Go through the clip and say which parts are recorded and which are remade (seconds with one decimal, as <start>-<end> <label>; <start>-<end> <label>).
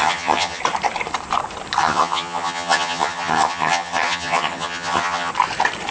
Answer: 0.0-0.6 remade; 0.6-1.8 recorded; 1.8-5.3 remade; 5.3-5.9 recorded